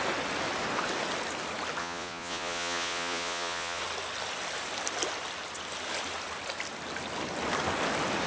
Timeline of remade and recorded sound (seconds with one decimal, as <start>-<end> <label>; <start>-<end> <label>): 0.0-1.8 recorded; 1.8-3.8 remade; 3.8-8.3 recorded